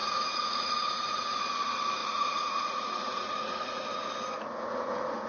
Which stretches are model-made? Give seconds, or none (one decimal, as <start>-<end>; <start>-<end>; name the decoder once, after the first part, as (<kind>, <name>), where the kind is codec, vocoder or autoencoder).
0.0-1.5 (vocoder, Vocos); 2.0-5.3